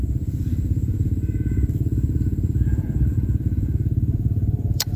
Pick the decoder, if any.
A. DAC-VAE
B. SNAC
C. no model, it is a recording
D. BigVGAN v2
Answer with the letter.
D